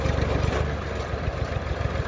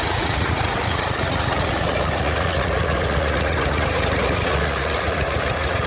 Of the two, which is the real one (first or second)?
first